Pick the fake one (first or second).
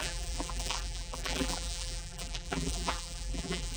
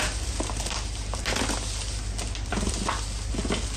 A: first